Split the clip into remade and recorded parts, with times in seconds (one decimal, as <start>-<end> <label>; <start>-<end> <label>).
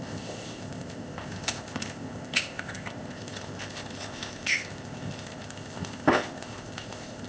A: 0.0-7.3 remade